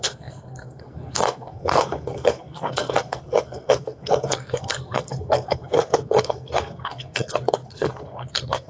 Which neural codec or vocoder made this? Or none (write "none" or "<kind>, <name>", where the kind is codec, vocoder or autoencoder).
codec, SNAC